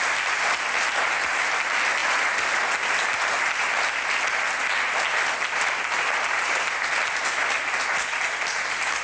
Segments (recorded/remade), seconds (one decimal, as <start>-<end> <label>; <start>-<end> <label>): 0.0-9.0 recorded